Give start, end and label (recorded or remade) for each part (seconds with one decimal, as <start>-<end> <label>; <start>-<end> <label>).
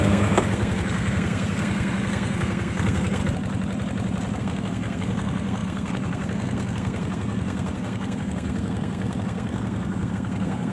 0.0-3.2 remade; 3.2-4.4 recorded; 4.4-10.7 remade